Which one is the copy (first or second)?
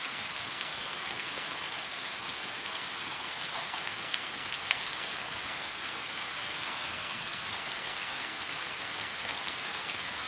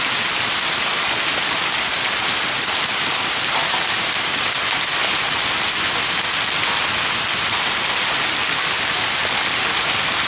first